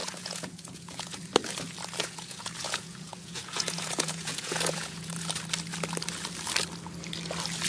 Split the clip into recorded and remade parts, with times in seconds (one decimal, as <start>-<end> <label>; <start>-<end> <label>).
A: 0.0-1.2 remade; 1.2-2.0 recorded; 2.0-5.1 remade; 5.1-7.7 recorded